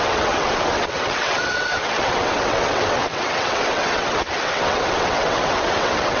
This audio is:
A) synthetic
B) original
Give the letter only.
A